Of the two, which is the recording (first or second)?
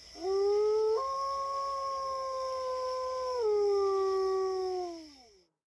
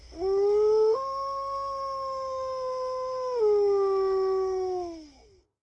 first